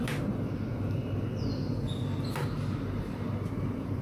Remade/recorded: recorded